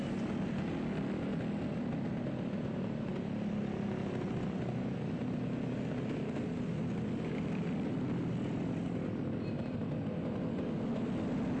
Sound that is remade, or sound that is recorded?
recorded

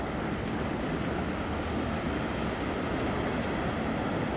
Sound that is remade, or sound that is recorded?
recorded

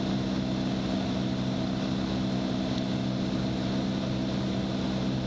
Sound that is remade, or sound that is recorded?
recorded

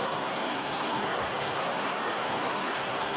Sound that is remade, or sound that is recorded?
remade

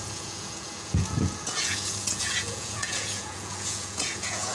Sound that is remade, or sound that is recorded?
remade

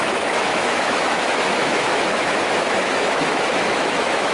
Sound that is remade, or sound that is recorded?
remade